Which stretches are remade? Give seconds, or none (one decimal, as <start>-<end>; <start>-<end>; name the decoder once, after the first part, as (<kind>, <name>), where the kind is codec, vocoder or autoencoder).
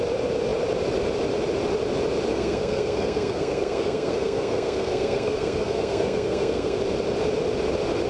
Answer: 2.3-6.8 (codec, SNAC)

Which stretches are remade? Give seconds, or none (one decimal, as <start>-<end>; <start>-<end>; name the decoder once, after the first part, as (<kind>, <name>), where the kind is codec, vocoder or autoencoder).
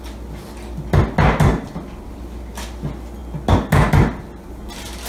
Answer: none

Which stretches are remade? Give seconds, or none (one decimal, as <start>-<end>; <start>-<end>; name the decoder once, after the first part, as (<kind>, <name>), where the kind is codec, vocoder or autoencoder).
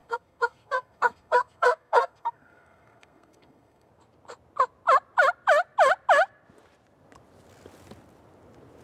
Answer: 0.0-3.9 (codec, SNAC)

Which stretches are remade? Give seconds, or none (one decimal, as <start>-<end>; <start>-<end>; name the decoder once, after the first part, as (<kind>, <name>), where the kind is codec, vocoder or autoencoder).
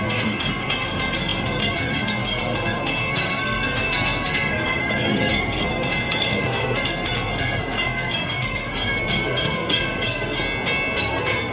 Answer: 0.0-10.4 (codec, SNAC); 11.0-11.5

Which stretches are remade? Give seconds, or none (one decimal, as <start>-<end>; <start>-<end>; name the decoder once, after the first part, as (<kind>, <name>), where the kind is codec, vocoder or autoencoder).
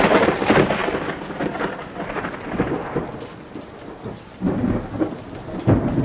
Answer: none